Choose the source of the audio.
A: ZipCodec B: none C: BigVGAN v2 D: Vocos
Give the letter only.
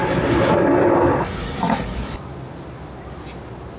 B